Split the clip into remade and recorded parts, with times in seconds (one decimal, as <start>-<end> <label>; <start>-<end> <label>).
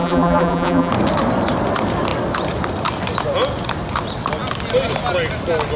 0.0-0.9 remade; 0.9-5.8 recorded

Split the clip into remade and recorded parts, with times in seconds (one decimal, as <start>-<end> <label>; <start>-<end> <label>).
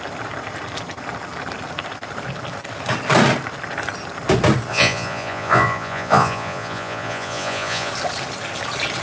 0.0-4.7 recorded; 4.7-7.9 remade; 7.9-9.0 recorded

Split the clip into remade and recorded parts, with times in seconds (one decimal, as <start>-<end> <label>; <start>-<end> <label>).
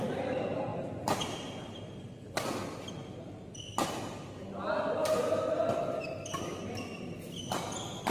0.0-0.7 recorded; 0.7-1.5 remade; 1.5-8.1 recorded